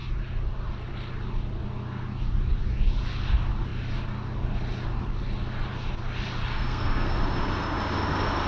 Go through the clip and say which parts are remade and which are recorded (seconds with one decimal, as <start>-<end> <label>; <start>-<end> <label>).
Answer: 0.0-6.5 recorded; 6.5-7.2 remade; 7.2-8.5 recorded